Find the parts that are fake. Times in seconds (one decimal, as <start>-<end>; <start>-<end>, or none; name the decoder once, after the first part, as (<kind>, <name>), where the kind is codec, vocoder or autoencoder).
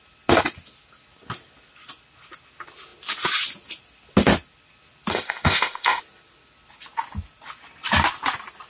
5.1-6.0 (codec, ZipCodec)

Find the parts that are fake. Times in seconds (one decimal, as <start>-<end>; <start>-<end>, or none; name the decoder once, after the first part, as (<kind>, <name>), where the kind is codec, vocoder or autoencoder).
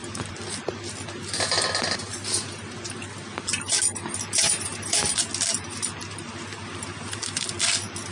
none